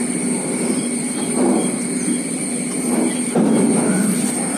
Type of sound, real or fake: real